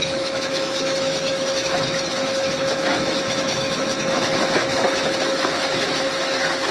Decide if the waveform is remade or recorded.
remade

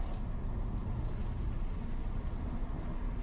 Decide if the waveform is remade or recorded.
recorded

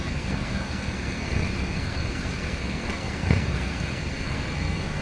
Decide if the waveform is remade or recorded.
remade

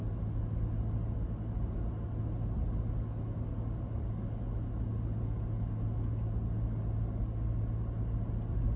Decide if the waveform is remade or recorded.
recorded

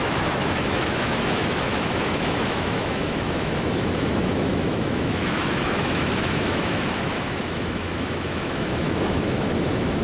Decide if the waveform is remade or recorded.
remade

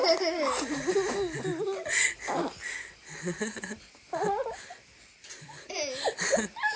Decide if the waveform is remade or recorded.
recorded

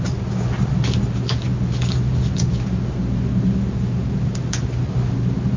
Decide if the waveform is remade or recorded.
recorded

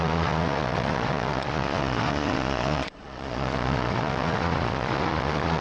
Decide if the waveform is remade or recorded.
remade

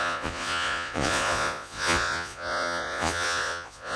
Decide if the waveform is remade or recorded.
remade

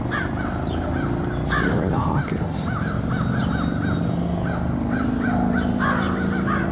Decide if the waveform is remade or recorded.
recorded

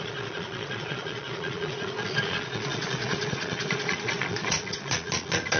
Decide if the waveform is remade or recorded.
remade